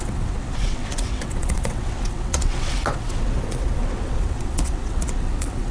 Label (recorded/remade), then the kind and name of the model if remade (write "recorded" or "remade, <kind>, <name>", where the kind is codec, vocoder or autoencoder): remade, vocoder, WaveNeXt